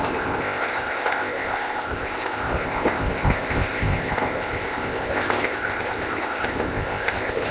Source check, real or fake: fake